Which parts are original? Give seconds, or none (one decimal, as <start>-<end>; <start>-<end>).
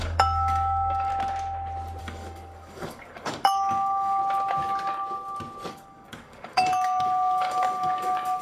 1.1-2.0; 4.2-5.7